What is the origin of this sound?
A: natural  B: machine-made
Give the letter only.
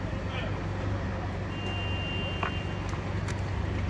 A